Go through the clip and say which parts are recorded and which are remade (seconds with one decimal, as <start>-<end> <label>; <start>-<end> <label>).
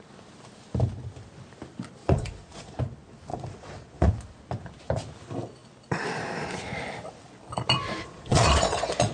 0.0-2.0 recorded; 2.0-2.8 remade; 2.8-3.3 recorded; 3.3-4.1 remade; 4.1-8.0 recorded; 8.0-9.1 remade